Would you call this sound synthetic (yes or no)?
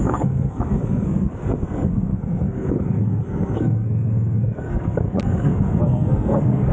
yes